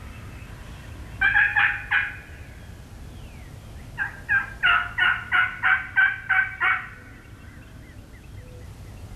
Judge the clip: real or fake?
real